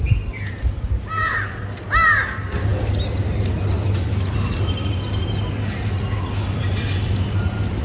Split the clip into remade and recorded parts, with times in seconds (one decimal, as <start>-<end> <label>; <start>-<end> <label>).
0.0-7.8 recorded